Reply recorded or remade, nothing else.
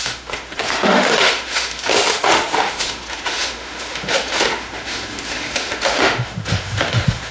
remade